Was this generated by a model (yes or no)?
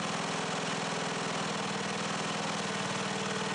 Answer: no